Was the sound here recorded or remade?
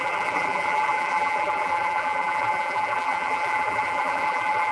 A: remade